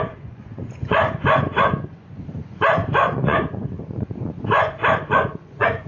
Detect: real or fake fake